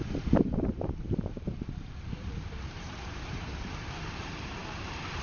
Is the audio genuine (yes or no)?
no